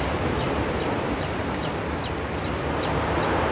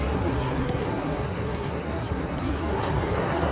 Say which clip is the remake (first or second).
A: second